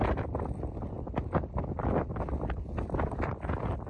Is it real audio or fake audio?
real